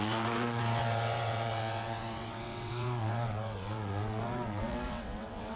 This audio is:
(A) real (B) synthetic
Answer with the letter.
B